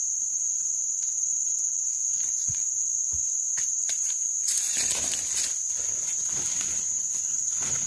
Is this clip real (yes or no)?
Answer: yes